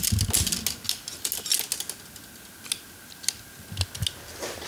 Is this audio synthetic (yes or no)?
no